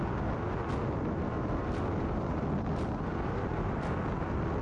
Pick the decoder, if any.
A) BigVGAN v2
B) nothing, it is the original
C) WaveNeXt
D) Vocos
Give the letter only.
B